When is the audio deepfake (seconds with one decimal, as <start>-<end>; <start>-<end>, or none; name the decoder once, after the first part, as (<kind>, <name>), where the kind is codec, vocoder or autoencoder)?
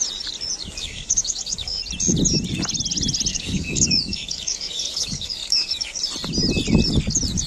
0.6-1.8 (codec, DAC); 3.3-6.0